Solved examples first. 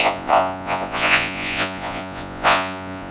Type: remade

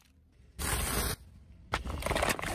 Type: recorded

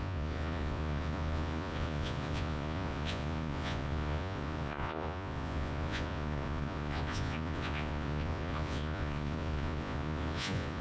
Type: remade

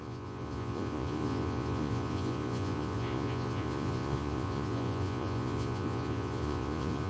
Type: remade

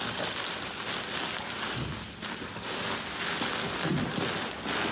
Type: recorded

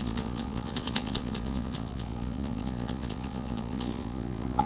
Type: remade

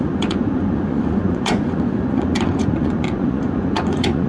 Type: remade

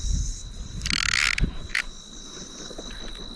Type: recorded